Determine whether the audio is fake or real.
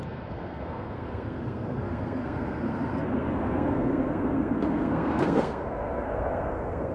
fake